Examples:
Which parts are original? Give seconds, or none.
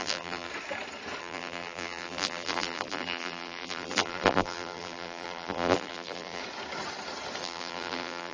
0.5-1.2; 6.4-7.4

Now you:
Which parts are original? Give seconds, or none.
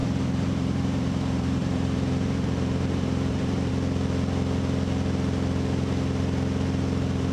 3.7-7.3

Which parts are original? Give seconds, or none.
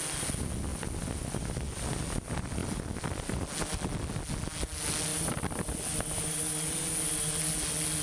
0.0-0.7; 1.5-2.6; 3.5-5.1; 6.4-8.0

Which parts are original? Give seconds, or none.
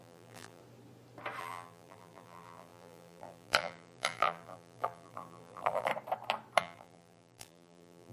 0.6-1.4; 5.9-6.6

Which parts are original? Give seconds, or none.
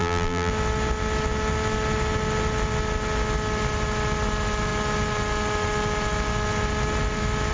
0.5-7.5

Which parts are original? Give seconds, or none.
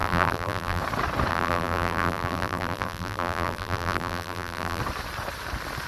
0.8-1.3; 4.8-5.9